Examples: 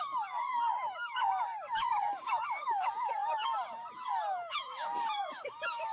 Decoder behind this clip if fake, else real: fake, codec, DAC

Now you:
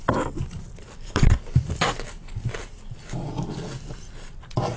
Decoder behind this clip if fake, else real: real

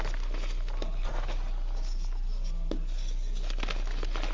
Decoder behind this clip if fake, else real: real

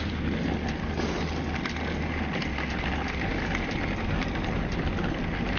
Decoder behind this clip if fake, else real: real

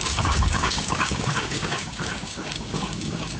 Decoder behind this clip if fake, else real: fake, codec, DAC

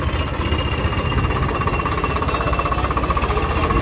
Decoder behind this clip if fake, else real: real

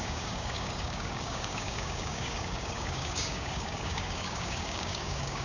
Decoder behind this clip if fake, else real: fake, codec, DAC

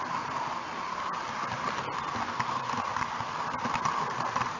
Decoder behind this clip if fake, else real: real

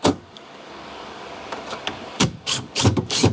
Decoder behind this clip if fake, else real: fake, codec, DAC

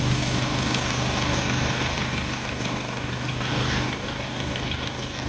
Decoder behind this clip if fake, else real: fake, codec, DAC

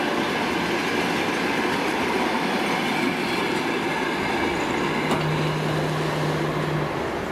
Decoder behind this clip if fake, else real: real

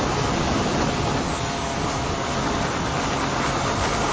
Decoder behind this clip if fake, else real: real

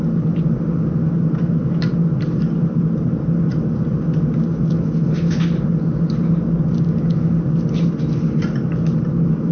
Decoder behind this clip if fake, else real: real